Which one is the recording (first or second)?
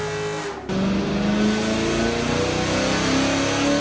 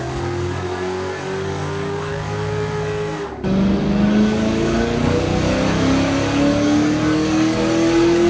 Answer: first